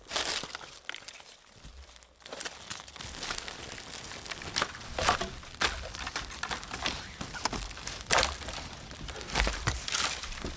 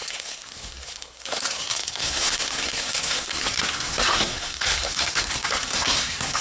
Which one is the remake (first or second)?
second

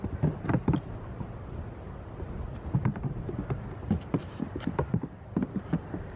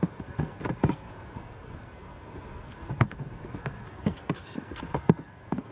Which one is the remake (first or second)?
second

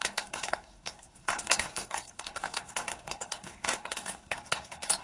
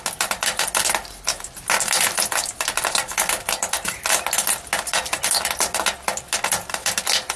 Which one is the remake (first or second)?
first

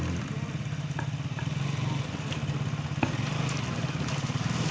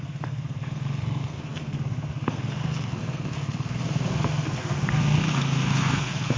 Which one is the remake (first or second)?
second